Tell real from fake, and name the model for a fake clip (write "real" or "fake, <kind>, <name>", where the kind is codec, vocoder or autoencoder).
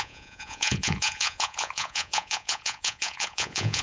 fake, vocoder, Vocos